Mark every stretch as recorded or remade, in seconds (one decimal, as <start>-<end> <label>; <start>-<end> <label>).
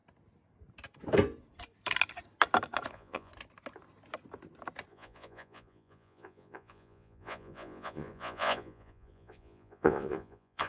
0.0-2.9 recorded; 2.9-3.3 remade; 3.3-4.9 recorded; 4.9-10.7 remade